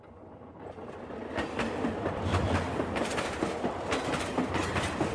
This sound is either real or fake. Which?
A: fake